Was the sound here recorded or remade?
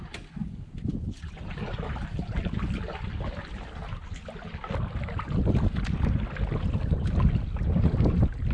recorded